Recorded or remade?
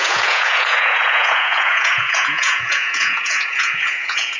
remade